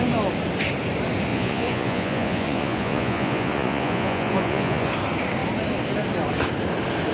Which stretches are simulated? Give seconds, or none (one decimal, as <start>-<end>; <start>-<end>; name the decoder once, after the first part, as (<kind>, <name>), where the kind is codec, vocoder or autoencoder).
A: 1.3-4.9 (vocoder, Vocos)